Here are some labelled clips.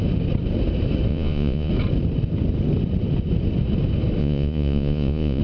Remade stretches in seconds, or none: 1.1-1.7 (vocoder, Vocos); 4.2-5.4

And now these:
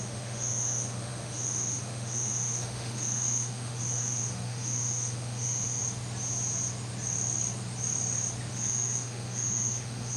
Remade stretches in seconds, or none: 0.0-5.8 (autoencoder, DAC-VAE); 8.5-10.2

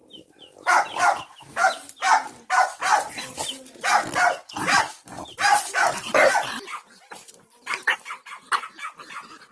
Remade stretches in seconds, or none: none

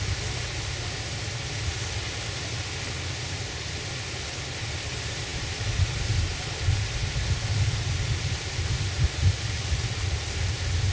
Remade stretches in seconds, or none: none

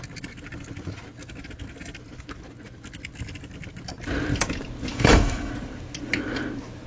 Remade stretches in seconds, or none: 4.9-5.5 (autoencoder, DAC-VAE)

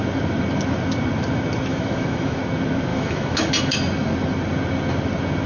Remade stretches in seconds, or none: 1.7-2.4 (autoencoder, DAC-VAE); 2.9-3.5

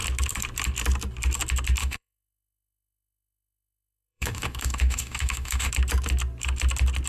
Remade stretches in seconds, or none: 1.8-5.7 (autoencoder, DAC-VAE)